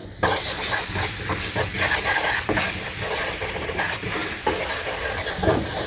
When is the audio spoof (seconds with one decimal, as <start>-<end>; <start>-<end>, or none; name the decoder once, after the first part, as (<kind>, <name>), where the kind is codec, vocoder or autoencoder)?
none